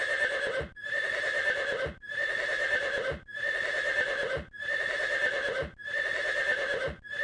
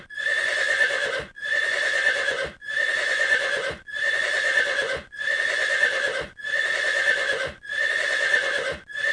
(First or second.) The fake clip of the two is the second